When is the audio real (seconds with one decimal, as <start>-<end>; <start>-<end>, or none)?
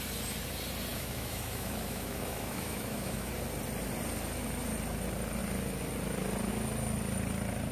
0.0-0.9; 3.3-7.7